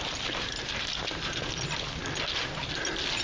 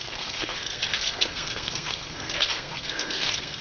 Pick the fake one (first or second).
second